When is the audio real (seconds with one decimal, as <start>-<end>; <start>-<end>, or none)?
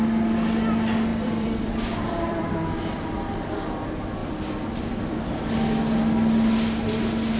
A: 0.0-1.1; 3.0-4.2; 5.4-7.4